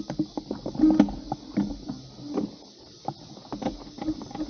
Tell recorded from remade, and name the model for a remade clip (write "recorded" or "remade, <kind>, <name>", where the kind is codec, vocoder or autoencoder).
recorded